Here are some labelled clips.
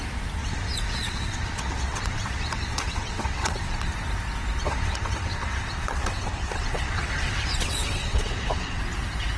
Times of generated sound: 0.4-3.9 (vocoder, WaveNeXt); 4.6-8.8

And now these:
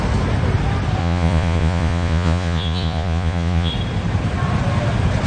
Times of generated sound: 1.0-3.7 (vocoder, Vocos)

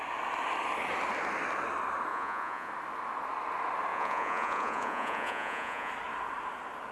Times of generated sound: 2.1-2.7 (vocoder, Vocos); 3.9-5.9

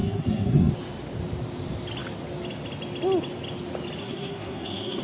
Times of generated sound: 0.0-0.7 (codec, SNAC); 4.0-5.0